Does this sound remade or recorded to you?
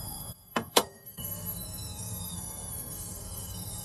remade